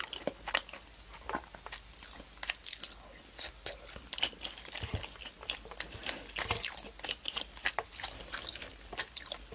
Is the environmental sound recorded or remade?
recorded